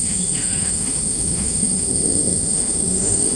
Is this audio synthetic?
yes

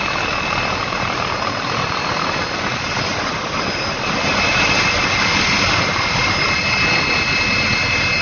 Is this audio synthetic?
no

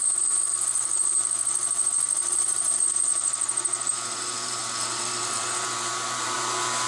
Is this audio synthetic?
yes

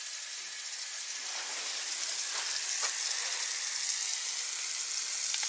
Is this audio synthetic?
no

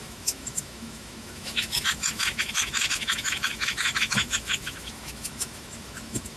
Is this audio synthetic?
yes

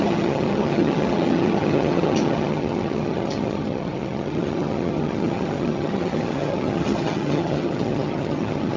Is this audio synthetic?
yes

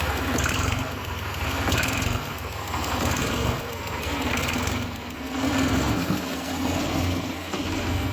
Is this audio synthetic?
yes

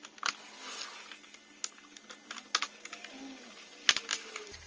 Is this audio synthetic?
no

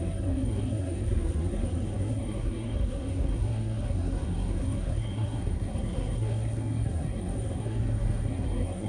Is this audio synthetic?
yes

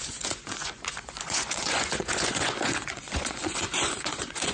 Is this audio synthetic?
yes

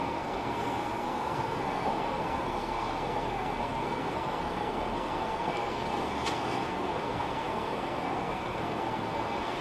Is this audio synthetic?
yes